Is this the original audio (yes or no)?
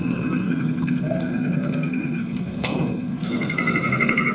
no